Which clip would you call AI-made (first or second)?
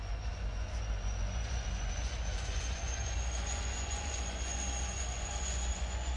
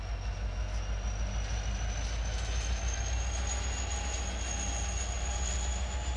first